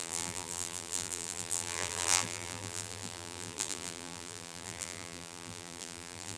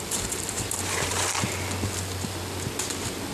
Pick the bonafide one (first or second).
second